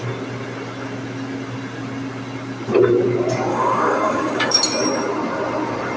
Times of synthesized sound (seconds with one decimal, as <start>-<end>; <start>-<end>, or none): 3.5-4.6